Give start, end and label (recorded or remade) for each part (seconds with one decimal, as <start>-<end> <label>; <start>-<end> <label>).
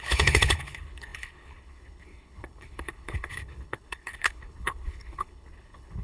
0.0-6.0 remade